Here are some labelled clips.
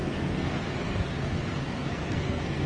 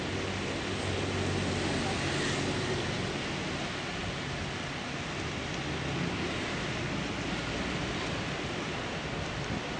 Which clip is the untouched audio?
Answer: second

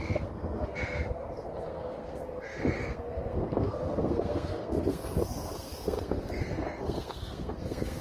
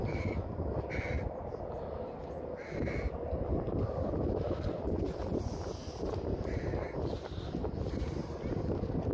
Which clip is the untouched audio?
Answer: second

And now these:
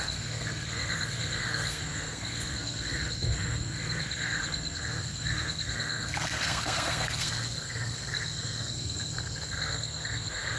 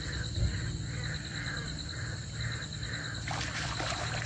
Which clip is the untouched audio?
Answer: second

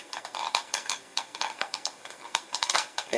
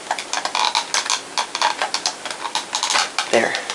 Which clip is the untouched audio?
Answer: second